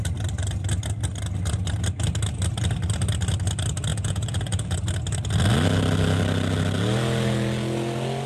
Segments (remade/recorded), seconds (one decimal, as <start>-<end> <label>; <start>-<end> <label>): 0.0-3.9 recorded; 3.9-4.8 remade; 4.8-8.3 recorded